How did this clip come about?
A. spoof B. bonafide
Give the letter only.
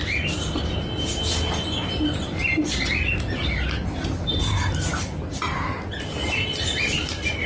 B